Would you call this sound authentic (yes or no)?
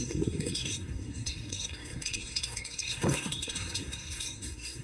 no